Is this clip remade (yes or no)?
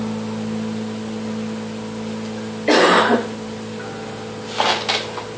no